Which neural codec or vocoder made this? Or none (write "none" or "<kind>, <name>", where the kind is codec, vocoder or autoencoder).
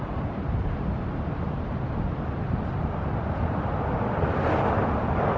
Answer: none